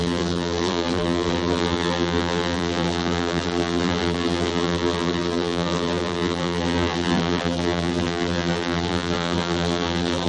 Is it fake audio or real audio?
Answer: fake